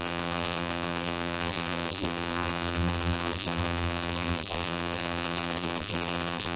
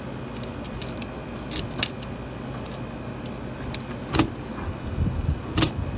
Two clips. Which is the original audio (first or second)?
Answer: second